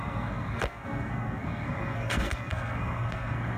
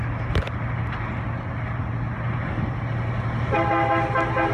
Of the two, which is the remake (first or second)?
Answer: first